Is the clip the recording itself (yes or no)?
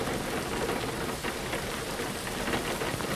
yes